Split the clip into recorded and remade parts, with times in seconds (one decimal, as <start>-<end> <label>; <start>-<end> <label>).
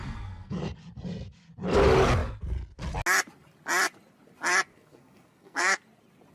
0.0-0.6 remade; 0.6-4.7 recorded; 4.7-5.8 remade; 5.8-6.3 recorded